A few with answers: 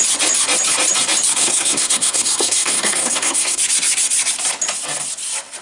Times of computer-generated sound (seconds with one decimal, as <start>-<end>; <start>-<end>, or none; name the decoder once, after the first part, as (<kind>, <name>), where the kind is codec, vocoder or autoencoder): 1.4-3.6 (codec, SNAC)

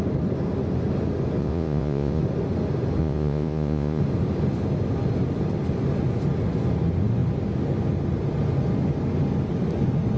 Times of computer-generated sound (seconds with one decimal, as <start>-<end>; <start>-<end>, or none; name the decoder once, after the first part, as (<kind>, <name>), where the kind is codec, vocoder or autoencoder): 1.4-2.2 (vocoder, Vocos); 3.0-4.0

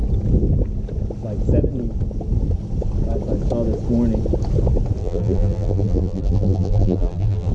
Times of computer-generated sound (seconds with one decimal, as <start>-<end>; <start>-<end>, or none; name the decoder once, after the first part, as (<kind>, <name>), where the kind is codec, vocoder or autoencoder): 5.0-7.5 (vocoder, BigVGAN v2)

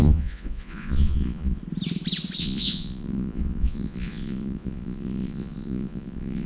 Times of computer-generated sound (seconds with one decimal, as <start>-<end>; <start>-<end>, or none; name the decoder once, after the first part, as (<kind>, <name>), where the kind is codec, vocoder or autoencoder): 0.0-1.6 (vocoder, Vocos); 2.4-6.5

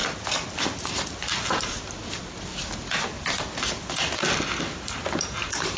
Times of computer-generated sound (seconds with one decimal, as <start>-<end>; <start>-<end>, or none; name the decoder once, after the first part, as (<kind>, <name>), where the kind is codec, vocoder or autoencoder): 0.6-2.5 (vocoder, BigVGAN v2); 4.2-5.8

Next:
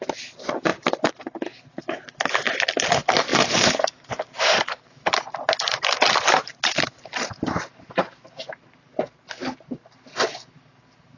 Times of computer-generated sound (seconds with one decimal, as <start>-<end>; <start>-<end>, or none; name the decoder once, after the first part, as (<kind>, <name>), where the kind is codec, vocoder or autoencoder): 3.3-4.2 (vocoder, BigVGAN v2); 6.5-9.9

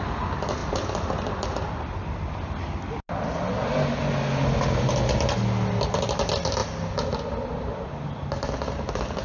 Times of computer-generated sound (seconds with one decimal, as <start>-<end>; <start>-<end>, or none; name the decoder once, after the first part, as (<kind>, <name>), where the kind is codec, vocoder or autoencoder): none